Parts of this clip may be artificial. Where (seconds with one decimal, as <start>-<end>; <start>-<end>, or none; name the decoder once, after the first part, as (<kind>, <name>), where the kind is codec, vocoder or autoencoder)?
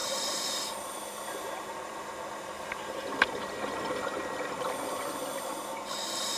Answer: 0.0-3.8 (vocoder, BigVGAN v2)